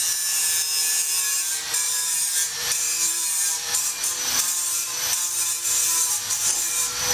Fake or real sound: fake